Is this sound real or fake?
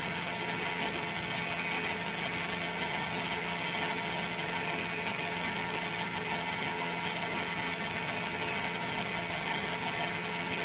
fake